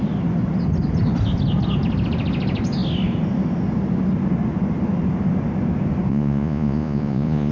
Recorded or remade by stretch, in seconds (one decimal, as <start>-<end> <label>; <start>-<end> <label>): 0.0-6.1 recorded; 6.1-7.5 remade